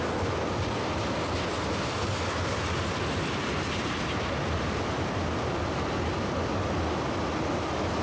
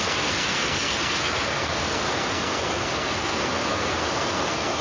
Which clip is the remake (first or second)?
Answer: second